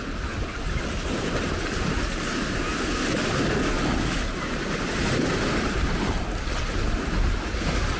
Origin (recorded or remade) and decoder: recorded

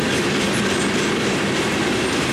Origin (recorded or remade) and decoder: recorded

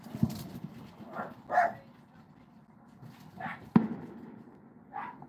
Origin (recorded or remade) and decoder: recorded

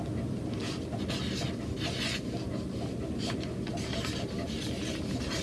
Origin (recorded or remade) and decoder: recorded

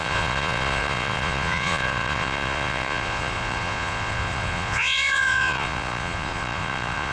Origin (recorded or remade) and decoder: remade, vocoder, Vocos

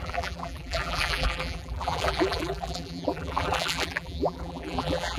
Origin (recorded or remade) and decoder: remade, vocoder, BigVGAN v2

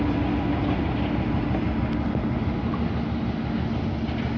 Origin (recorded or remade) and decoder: recorded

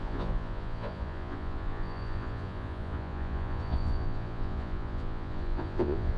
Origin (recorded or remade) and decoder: remade, vocoder, Vocos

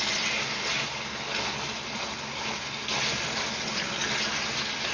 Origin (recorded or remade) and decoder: recorded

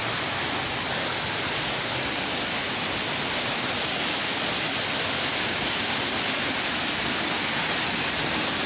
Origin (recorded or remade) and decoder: recorded